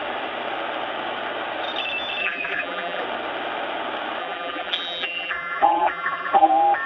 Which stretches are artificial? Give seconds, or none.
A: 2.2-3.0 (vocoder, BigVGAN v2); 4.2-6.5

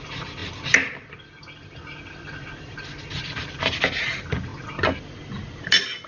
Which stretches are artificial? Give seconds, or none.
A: none

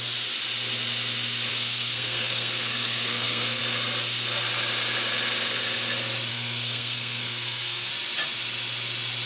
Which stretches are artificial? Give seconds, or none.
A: 1.5-3.6 (codec, SNAC); 6.3-7.9

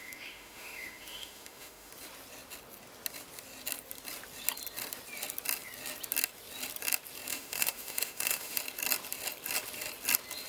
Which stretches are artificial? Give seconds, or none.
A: 0.0-1.9 (autoencoder, DAC-VAE); 7.3-8.6

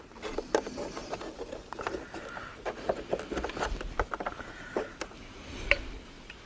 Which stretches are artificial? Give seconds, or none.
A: none